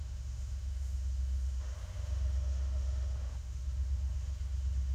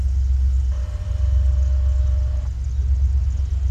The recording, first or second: second